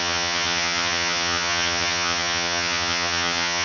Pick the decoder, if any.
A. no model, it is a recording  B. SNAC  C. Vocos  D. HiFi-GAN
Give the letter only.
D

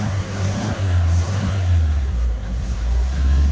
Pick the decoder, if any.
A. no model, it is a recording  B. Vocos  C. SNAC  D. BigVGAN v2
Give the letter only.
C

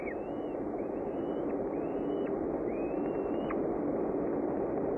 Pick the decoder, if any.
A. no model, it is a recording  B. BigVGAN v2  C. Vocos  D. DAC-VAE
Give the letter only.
A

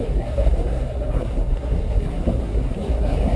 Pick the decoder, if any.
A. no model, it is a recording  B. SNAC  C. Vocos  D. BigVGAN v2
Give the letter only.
B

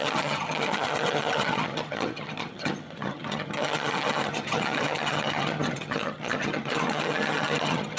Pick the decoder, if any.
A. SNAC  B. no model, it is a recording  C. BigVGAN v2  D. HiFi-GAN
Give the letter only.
D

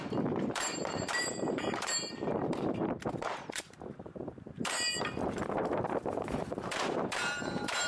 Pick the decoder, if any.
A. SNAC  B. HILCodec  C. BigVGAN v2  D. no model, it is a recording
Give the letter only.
C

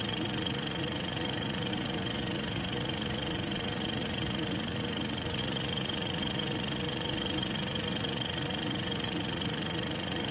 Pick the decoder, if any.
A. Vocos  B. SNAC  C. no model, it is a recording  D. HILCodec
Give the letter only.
A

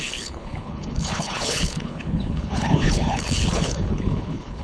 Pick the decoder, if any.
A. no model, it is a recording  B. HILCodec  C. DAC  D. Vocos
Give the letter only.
B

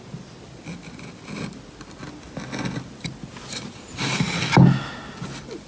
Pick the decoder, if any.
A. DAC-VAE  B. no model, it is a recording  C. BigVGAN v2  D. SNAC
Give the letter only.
B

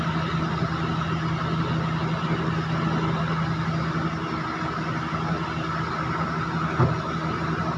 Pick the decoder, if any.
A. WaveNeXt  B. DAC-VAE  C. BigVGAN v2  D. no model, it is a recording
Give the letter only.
D